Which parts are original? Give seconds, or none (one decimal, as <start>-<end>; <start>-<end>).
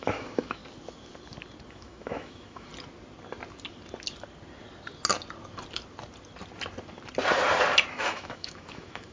0.6-1.7; 2.7-7.9